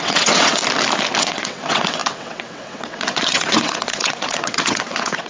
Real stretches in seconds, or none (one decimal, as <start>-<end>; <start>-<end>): 0.6-1.2